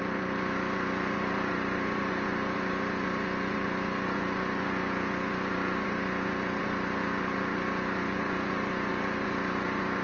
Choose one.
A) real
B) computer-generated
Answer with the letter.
B